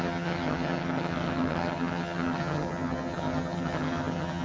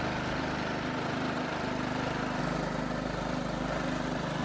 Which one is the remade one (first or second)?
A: first